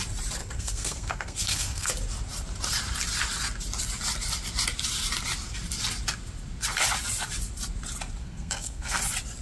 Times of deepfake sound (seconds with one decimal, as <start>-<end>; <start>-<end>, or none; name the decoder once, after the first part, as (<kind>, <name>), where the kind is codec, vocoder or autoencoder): 0.4-1.9 (codec, SNAC); 8.2-9.0